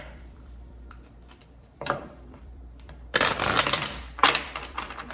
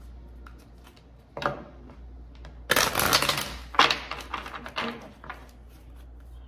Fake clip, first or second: first